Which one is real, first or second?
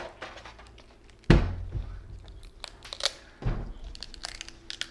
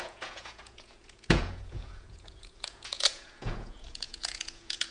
first